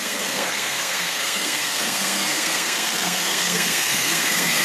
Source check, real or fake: fake